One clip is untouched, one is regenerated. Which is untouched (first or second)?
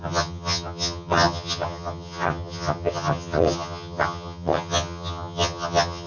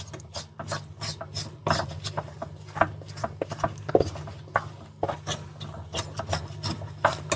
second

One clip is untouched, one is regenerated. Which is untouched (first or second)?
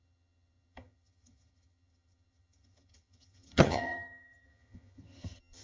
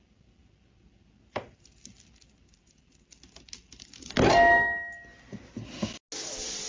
second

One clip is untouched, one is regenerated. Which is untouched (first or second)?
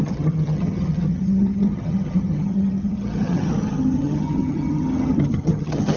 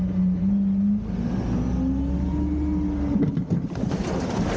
second